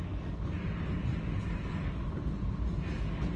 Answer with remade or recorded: recorded